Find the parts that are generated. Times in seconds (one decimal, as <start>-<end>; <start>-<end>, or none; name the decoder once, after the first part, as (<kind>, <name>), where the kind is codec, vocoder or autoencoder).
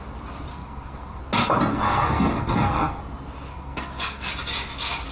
0.5-1.2 (codec, SNAC); 1.7-3.0; 3.5-4.3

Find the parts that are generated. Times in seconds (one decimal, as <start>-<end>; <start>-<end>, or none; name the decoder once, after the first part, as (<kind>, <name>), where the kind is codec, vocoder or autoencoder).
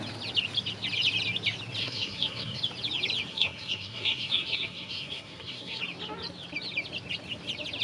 1.8-2.6 (codec, SNAC); 3.3-5.8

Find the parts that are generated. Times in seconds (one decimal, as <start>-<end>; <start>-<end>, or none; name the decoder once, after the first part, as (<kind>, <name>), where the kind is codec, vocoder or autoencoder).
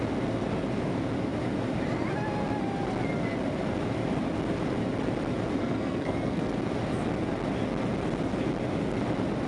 5.6-6.5 (codec, SNAC)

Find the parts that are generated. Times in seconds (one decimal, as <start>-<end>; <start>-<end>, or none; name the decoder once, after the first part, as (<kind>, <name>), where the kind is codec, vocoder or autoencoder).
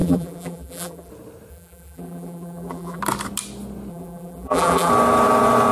0.0-1.1 (vocoder, BigVGAN v2); 1.5-3.0; 3.9-4.9